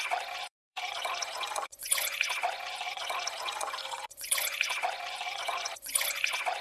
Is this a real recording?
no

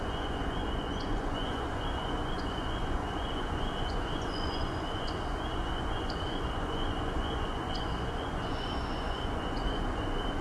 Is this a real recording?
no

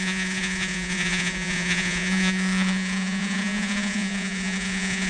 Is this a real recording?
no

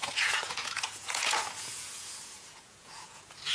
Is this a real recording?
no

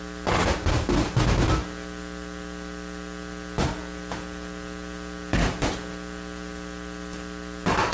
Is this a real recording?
yes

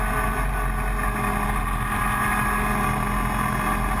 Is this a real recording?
yes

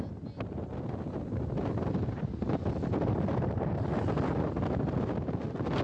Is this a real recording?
yes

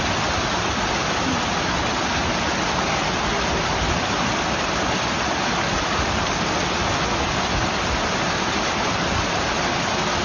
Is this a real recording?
yes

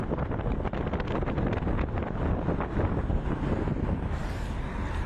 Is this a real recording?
yes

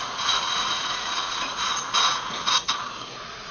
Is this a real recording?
no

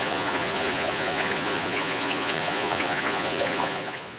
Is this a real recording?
no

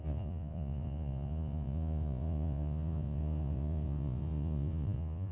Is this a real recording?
no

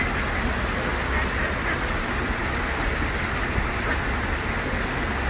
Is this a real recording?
yes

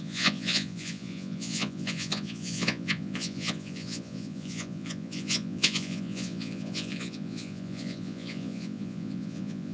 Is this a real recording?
no